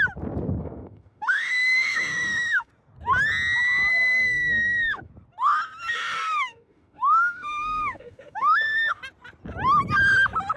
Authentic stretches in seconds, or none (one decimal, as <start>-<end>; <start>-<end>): 0.0-0.6; 2.7-3.9; 5.1-5.9; 9.0-10.6